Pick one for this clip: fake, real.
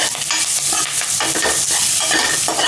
real